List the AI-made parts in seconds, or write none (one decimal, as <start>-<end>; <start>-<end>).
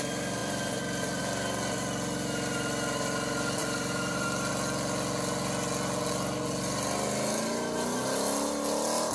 0.4-1.2; 3.6-4.5